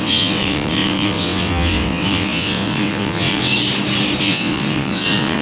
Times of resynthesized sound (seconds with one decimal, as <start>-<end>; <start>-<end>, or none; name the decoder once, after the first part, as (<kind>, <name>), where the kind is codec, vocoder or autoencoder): 0.0-3.5 (vocoder, WaveNeXt); 4.2-5.4